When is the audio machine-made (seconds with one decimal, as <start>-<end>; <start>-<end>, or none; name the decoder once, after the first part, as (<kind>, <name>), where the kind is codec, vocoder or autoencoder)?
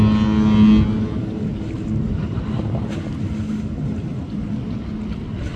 none